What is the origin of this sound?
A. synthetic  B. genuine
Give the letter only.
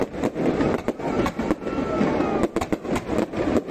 B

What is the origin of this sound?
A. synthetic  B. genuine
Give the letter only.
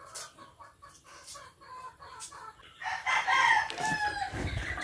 A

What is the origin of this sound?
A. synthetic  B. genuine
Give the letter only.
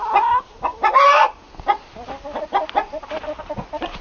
B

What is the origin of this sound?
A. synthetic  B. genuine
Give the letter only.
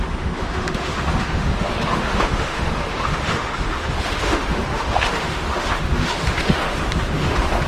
A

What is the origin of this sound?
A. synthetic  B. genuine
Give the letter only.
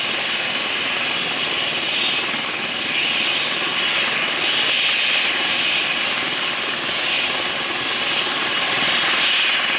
B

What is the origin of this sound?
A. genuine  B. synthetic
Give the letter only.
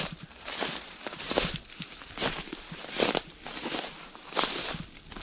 B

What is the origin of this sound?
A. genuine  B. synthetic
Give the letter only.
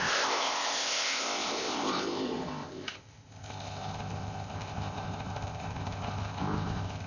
B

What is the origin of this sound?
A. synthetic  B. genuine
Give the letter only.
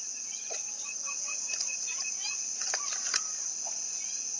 B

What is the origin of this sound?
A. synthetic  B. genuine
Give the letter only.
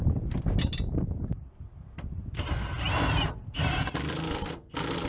B